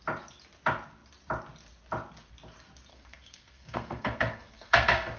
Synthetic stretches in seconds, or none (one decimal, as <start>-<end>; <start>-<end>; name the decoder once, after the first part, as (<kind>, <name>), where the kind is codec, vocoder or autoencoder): 2.9-5.2 (codec, SNAC)